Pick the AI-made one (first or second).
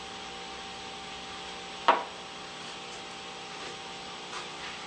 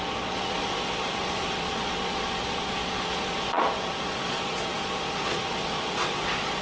second